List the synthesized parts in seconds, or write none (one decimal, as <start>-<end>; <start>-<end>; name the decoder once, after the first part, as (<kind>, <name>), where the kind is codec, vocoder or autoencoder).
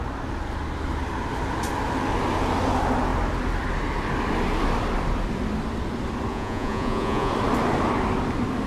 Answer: 6.3-7.3 (vocoder, Vocos)